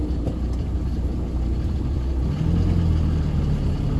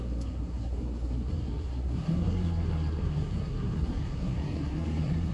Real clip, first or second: first